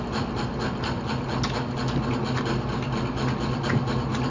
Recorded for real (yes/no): yes